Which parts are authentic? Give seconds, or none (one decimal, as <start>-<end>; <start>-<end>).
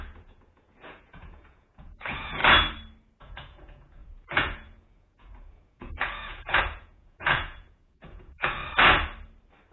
2.4-3.2; 8.6-9.7